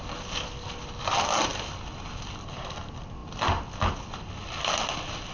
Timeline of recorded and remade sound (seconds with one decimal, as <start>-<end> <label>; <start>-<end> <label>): 0.0-5.3 recorded